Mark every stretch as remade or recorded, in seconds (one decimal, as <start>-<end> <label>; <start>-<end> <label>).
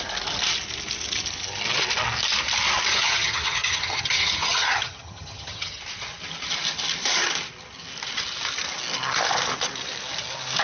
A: 0.0-2.9 recorded; 2.9-5.8 remade; 5.8-10.6 recorded